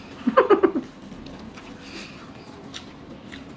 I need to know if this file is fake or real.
real